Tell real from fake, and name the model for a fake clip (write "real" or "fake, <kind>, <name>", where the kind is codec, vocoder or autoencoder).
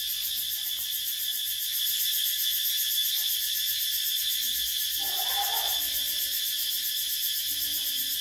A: real